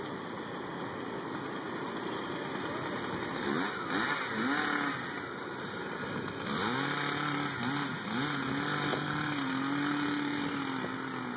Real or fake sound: real